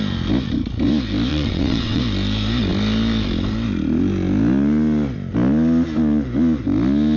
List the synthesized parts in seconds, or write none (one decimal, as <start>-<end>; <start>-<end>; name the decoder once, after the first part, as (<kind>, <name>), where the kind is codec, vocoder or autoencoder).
1.3-2.0 (vocoder, WaveNeXt)